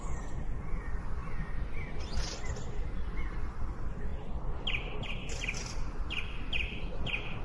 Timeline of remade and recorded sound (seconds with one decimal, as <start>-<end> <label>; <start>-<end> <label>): 0.0-7.4 recorded